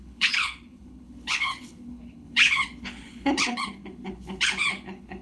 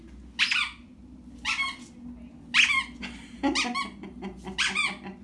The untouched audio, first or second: second